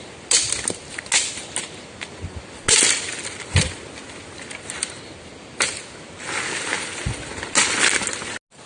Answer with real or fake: real